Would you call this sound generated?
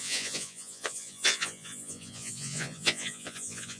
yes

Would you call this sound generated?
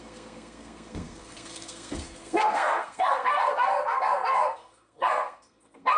yes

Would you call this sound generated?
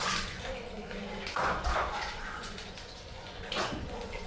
yes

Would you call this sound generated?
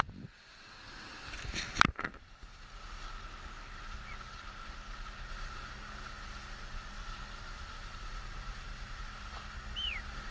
no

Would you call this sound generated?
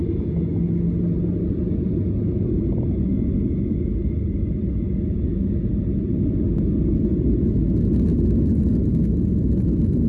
no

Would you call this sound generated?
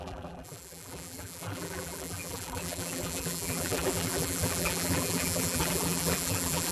yes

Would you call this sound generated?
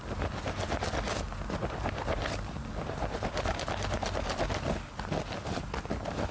no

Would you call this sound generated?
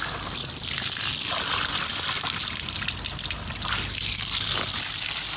no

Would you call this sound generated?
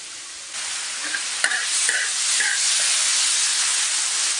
no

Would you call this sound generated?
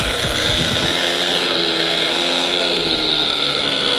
yes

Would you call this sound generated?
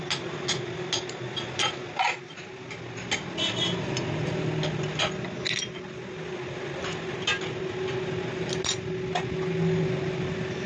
no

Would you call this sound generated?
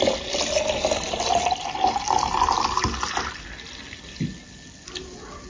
no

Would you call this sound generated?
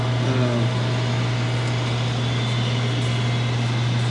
no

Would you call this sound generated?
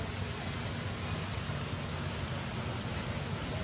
no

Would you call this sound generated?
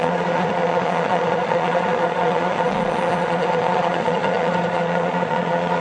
yes